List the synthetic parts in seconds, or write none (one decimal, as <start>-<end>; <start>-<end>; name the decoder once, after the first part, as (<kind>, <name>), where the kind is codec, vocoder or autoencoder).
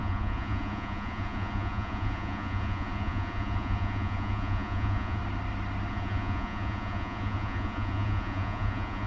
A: 0.0-5.2 (vocoder, Vocos); 5.9-9.1